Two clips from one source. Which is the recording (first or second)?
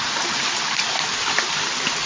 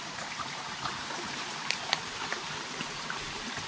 first